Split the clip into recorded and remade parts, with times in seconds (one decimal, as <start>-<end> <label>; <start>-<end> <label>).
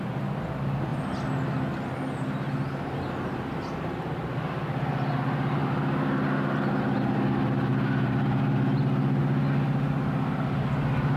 0.0-11.2 recorded